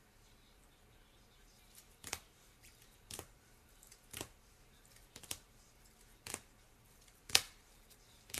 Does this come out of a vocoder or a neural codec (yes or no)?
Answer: yes